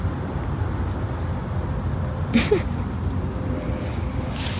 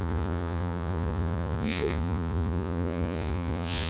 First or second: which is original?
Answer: first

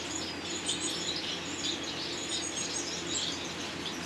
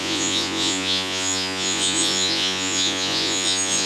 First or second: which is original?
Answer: first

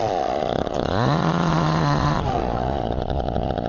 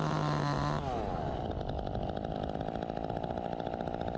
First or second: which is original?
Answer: second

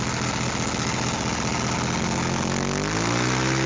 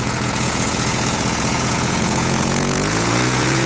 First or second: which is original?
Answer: first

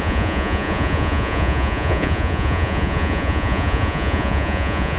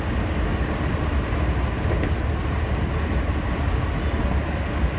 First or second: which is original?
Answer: second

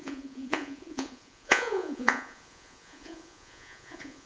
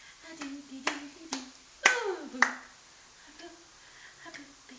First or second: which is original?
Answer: second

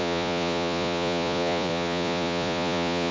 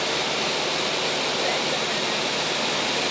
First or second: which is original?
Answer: second